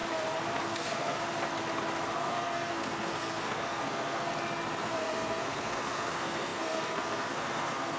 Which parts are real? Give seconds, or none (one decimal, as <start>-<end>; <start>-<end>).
0.0-0.6; 1.2-2.2; 4.3-4.8